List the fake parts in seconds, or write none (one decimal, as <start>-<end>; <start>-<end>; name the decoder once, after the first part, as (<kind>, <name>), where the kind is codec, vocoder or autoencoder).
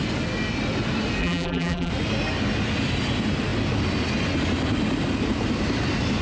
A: 1.2-1.9 (vocoder, BigVGAN v2)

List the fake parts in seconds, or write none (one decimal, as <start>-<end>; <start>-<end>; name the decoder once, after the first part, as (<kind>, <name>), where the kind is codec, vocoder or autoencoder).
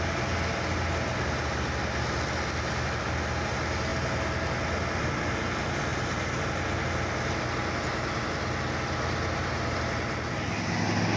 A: none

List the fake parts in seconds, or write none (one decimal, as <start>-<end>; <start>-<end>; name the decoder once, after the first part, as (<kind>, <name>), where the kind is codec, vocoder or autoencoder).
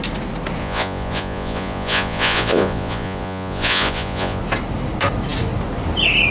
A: 0.6-4.4 (vocoder, Vocos)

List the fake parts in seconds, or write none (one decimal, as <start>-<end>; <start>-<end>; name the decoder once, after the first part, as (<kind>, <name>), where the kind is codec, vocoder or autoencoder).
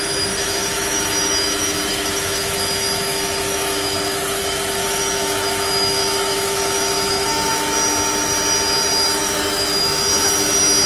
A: 0.0-7.5 (autoencoder, DAC-VAE); 9.2-10.1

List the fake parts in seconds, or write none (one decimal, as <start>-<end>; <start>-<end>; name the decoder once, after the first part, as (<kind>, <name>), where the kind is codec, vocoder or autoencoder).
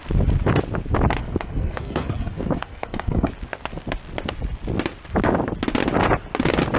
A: 1.2-3.3 (codec, SNAC)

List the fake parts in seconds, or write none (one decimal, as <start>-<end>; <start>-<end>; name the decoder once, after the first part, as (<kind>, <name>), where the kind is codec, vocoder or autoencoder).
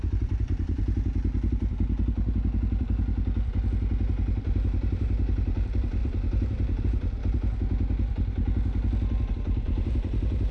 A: 0.0-0.8 (vocoder, BigVGAN v2); 4.4-7.2; 9.3-10.5